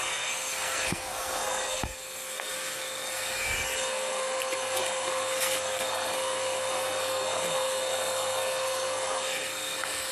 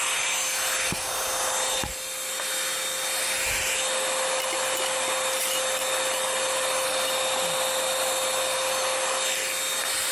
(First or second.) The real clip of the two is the second